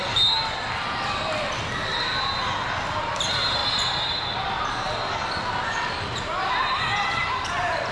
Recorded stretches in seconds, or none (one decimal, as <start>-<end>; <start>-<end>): 0.0-7.9